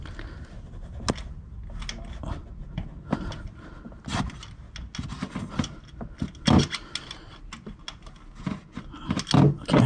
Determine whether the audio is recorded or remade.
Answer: recorded